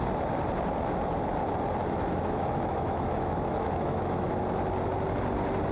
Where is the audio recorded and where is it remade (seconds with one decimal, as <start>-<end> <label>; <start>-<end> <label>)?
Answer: 0.0-1.8 recorded; 1.8-4.4 remade; 4.4-5.7 recorded